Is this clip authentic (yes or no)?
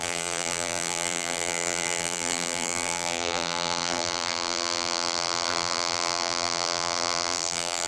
no